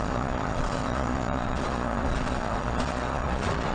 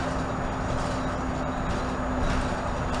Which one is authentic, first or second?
second